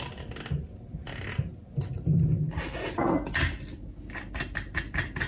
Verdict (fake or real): real